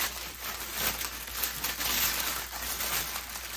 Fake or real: real